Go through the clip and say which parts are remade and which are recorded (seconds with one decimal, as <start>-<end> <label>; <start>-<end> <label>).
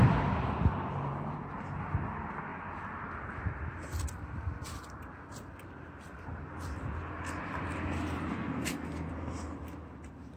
0.0-8.3 recorded; 8.3-9.1 remade; 9.1-10.4 recorded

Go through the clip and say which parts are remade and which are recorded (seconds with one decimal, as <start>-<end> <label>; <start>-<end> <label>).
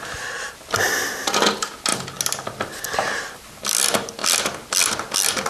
0.0-5.5 recorded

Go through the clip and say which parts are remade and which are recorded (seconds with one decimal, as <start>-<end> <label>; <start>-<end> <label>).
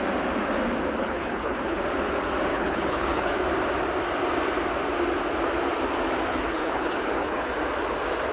0.0-1.0 recorded; 1.0-1.8 remade; 1.8-2.5 recorded; 2.5-3.3 remade; 3.3-6.3 recorded; 6.3-7.5 remade; 7.5-8.3 recorded